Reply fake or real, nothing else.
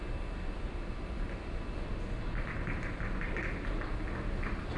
real